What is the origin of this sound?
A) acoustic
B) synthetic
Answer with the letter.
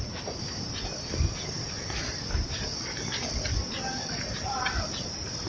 A